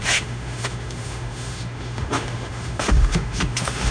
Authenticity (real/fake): fake